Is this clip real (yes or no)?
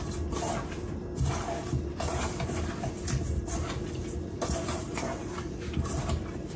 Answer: yes